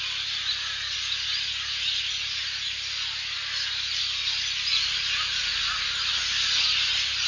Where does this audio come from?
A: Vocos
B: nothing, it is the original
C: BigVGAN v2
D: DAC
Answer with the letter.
B